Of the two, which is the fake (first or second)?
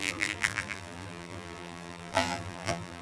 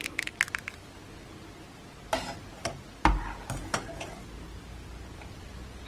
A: first